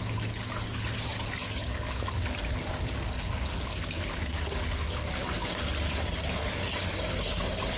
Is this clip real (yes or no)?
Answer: yes